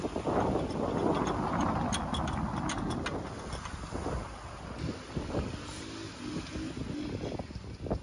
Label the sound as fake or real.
real